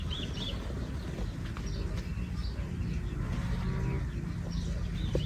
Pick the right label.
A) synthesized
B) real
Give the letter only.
B